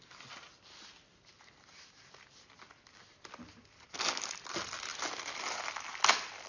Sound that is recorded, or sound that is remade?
recorded